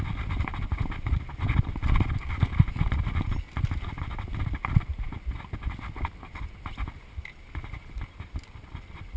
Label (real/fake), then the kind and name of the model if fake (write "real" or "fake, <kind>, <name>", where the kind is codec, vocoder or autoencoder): real